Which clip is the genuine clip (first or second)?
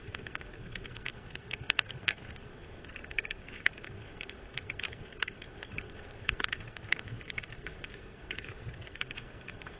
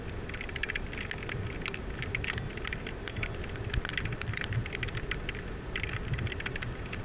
second